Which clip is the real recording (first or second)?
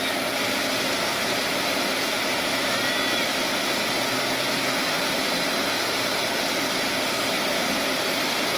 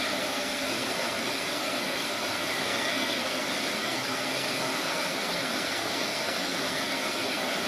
first